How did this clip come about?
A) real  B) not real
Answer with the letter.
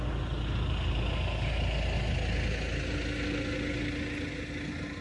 A